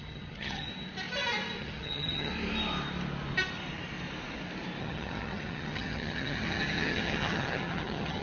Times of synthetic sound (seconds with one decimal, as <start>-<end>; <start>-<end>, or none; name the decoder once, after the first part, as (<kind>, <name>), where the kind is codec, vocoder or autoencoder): 0.0-0.7 (vocoder, HiFi-GAN); 1.6-2.3; 4.8-8.2